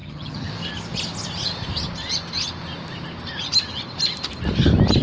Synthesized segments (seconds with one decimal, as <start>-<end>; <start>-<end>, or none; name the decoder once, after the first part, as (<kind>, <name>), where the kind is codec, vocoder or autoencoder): 0.0-0.5 (vocoder, HiFi-GAN)